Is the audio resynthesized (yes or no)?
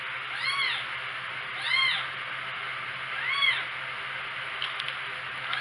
no